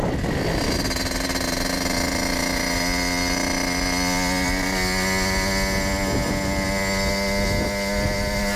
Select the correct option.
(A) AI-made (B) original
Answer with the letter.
B